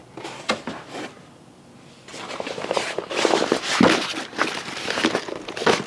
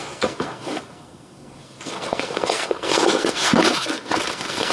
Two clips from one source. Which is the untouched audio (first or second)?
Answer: first